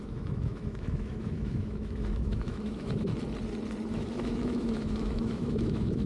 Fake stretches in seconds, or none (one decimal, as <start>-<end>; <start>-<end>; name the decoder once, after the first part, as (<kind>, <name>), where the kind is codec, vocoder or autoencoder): 0.0-3.1 (autoencoder, DAC-VAE); 3.9-6.1